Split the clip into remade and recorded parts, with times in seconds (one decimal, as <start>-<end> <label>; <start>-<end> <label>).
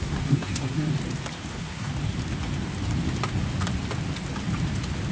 0.0-0.9 remade; 0.9-1.5 recorded; 1.5-1.9 remade; 1.9-5.1 recorded